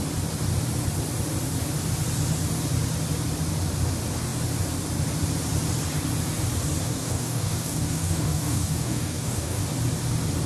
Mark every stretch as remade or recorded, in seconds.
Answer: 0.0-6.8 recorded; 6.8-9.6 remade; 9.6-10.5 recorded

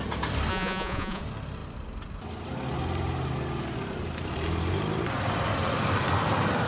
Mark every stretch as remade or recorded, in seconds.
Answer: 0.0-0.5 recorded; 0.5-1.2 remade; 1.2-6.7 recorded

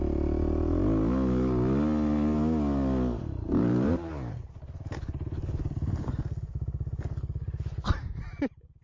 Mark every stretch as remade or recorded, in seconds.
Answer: 0.0-3.2 recorded; 3.2-4.1 remade; 4.1-8.8 recorded

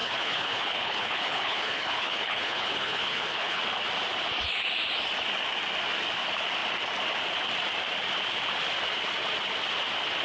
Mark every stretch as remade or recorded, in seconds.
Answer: 0.0-3.6 remade; 3.6-10.2 recorded

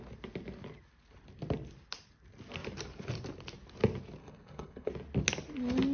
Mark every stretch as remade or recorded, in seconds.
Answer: 0.0-4.2 recorded; 4.2-4.9 remade; 4.9-5.9 recorded

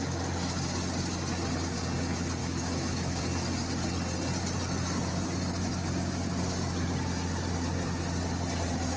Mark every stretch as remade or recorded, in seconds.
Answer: 0.0-2.4 recorded; 2.4-3.2 remade; 3.2-9.0 recorded

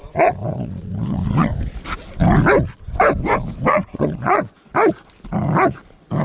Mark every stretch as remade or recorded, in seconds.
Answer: 0.0-1.5 remade; 1.5-3.7 recorded; 3.7-4.7 remade; 4.7-6.2 recorded

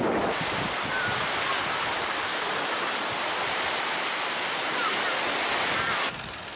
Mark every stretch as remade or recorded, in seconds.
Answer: 0.0-6.6 recorded